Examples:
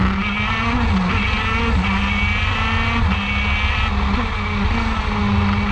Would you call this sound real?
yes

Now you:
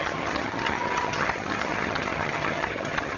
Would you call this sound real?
no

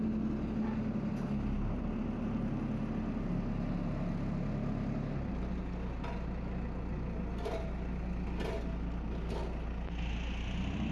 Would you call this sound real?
yes